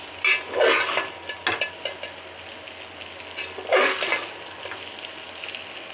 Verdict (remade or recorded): recorded